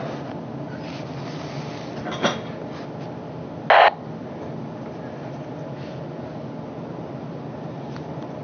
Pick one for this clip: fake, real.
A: real